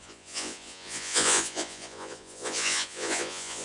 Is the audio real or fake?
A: fake